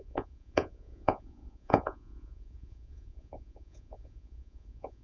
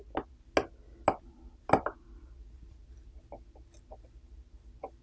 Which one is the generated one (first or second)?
first